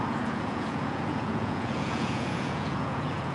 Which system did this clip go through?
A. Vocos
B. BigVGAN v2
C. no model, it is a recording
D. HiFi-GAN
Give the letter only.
A